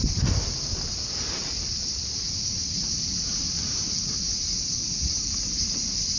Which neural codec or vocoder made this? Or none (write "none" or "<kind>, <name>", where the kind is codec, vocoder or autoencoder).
vocoder, BigVGAN v2